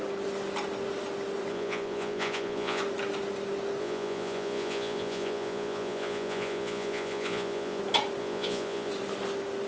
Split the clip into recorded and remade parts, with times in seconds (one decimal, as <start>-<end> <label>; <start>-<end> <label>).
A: 0.0-1.5 recorded; 1.5-2.8 remade; 2.8-3.8 recorded; 3.8-7.8 remade; 7.8-8.2 recorded; 8.2-8.9 remade; 8.9-9.7 recorded